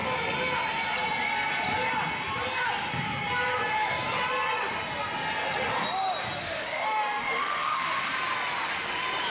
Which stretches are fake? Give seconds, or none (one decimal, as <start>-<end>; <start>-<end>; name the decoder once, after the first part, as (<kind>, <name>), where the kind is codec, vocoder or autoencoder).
6.4-8.1 (autoencoder, DAC-VAE)